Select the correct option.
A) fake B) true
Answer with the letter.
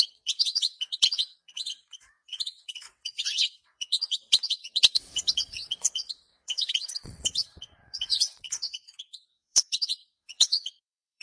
A